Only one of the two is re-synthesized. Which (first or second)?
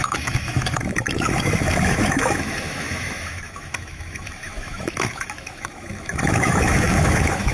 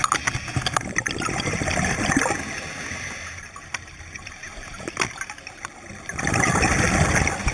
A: first